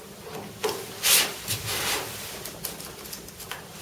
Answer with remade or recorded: recorded